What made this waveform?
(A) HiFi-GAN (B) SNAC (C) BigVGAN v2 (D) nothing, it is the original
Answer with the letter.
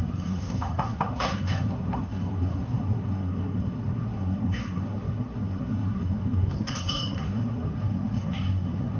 B